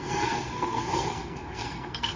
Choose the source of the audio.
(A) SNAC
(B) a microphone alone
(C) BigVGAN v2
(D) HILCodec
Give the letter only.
A